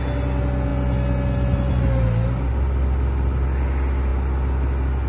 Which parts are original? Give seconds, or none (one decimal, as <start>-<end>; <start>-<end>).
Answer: 0.0-5.1